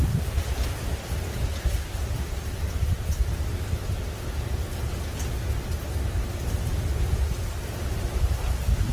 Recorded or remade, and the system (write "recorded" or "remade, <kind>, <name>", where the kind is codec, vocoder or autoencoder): recorded